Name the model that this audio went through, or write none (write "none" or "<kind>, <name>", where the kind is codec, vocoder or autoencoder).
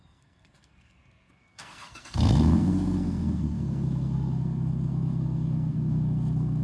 codec, SNAC